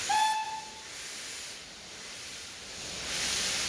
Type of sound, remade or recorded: recorded